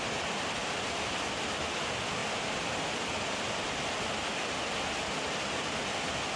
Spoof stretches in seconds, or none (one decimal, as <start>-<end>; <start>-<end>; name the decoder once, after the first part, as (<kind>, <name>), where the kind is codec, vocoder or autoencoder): 0.6-1.1 (vocoder, BigVGAN v2)